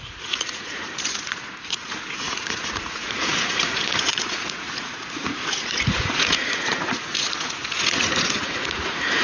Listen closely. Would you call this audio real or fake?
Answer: fake